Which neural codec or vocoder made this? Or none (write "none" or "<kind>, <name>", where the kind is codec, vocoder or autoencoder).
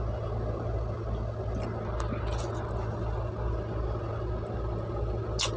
none